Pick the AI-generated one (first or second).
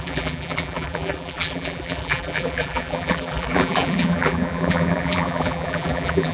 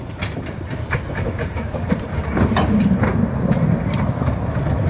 first